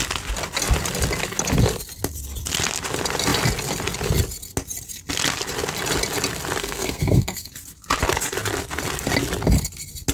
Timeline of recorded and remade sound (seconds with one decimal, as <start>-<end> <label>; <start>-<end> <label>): 0.0-6.6 recorded; 6.6-7.5 remade; 7.5-10.1 recorded